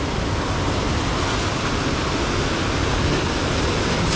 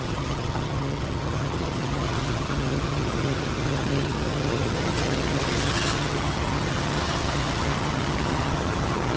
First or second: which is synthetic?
second